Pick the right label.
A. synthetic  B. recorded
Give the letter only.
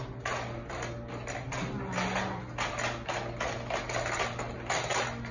B